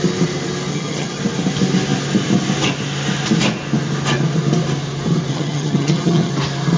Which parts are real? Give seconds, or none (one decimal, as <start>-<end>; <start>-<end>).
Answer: 0.0-0.7; 1.2-5.3; 6.3-6.8